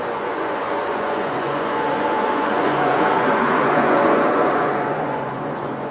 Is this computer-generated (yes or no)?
yes